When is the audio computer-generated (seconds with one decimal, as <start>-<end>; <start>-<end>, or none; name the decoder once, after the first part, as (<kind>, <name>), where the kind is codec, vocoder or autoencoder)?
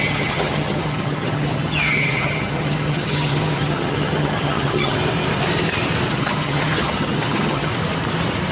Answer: 0.0-5.0 (vocoder, HiFi-GAN); 6.1-7.7